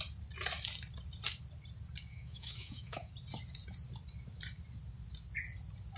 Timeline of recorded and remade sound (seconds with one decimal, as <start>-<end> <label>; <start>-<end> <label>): 0.0-2.1 recorded; 2.1-3.1 remade; 3.1-6.0 recorded